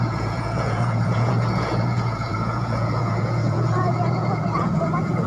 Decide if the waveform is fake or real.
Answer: fake